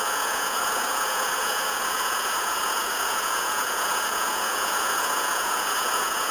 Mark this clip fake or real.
fake